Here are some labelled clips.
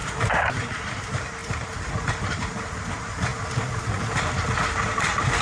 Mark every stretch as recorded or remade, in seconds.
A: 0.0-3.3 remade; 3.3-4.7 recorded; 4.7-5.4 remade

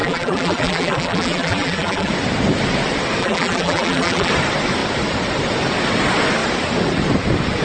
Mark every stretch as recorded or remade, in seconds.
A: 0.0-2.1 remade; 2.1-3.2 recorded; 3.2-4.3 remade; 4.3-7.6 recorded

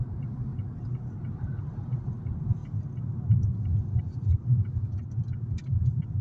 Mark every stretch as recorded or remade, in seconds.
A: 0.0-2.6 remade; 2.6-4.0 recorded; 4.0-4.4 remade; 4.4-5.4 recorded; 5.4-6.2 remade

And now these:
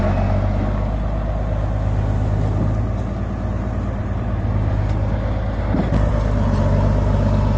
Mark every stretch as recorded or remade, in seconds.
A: 0.0-4.0 recorded; 4.0-6.1 remade; 6.1-7.6 recorded

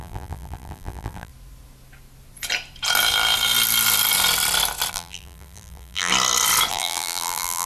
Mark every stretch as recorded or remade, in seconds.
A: 0.0-1.3 remade; 1.3-4.9 recorded; 4.9-6.1 remade; 6.1-6.7 recorded; 6.7-7.7 remade

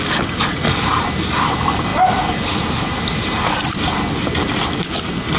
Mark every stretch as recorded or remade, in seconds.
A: 0.0-5.4 recorded

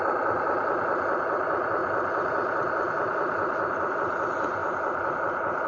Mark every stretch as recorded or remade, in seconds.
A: 0.0-1.8 recorded; 1.8-3.9 remade; 3.9-4.6 recorded; 4.6-5.1 remade; 5.1-5.7 recorded